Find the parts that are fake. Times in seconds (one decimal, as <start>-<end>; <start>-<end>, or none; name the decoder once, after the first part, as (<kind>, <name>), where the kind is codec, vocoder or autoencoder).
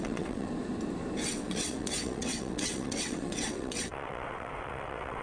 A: 0.0-0.5 (vocoder, WaveNeXt); 1.3-5.2